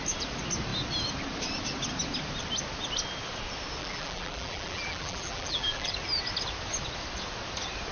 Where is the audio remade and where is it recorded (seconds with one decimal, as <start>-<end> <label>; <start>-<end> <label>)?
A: 0.0-3.8 recorded; 3.8-5.9 remade; 5.9-7.9 recorded